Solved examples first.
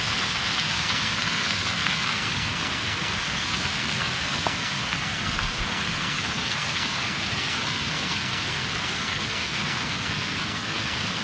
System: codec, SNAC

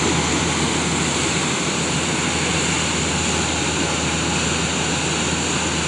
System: none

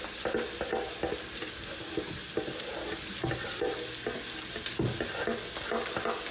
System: none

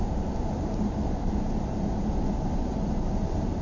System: vocoder, BigVGAN v2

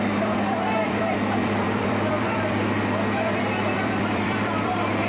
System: vocoder, BigVGAN v2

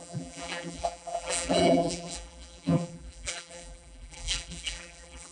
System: vocoder, BigVGAN v2